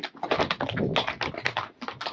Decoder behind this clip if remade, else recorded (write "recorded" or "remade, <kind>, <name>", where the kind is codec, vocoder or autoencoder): recorded